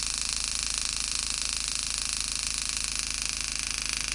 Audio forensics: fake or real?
real